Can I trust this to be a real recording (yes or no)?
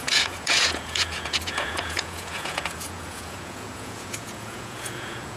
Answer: no